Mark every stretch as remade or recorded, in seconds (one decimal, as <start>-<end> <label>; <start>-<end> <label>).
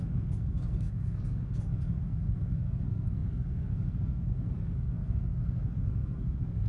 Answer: 0.0-6.7 remade